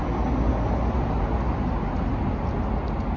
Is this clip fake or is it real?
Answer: real